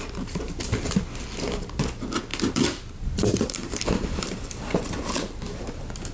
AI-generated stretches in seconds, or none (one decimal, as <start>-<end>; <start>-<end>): 2.3-3.8